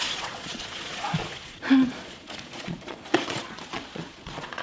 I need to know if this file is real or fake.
fake